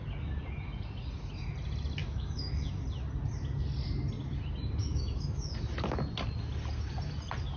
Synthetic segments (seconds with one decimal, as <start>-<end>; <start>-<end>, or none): 2.0-2.7; 4.8-5.5